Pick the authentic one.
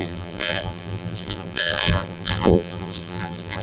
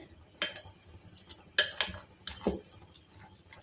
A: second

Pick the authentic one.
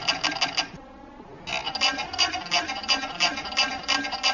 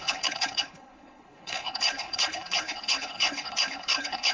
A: first